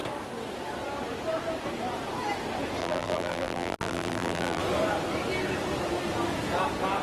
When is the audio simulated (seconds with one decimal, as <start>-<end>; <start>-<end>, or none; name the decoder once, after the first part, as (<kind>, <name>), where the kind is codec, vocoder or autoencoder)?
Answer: 2.8-4.6 (vocoder, BigVGAN v2)